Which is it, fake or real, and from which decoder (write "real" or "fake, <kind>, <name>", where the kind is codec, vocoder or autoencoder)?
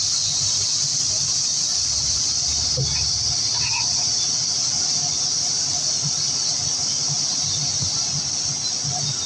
real